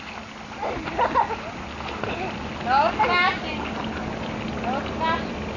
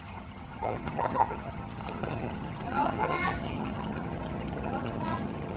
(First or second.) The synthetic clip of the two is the second